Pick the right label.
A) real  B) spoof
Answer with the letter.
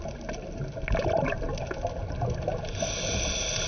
A